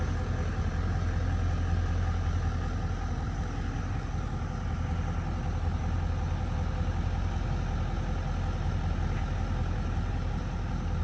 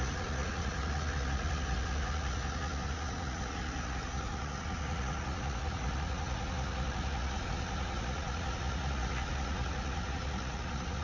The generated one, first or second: second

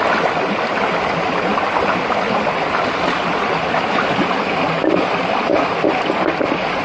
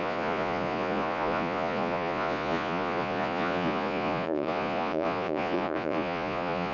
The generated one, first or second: second